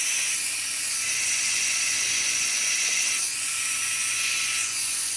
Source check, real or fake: fake